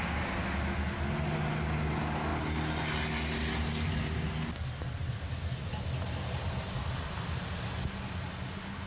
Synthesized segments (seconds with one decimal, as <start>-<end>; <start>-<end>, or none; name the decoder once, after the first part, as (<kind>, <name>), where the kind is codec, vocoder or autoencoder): none